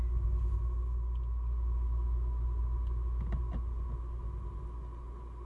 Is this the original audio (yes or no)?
yes